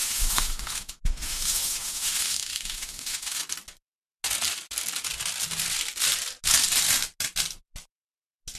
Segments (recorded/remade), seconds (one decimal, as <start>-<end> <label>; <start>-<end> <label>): 0.0-3.4 remade; 3.4-8.6 recorded